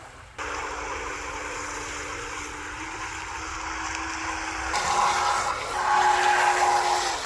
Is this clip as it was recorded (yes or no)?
yes